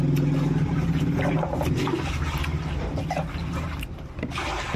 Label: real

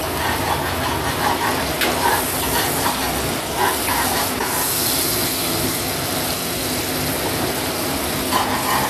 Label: real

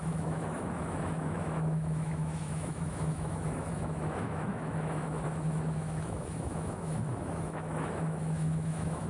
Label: fake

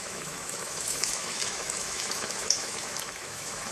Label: fake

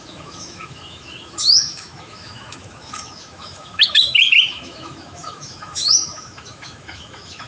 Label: fake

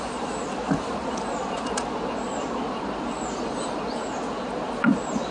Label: real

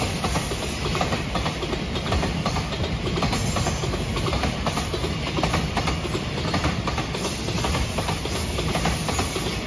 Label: real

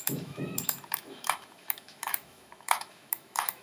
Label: fake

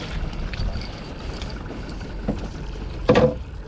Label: real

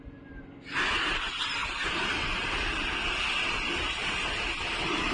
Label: real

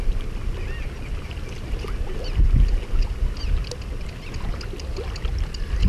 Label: real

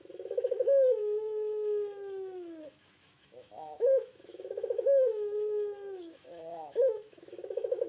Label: fake